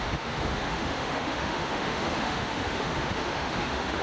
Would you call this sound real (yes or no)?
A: no